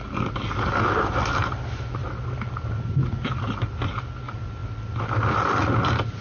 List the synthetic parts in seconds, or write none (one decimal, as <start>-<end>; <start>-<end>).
none